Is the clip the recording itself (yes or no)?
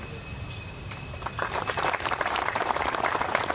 yes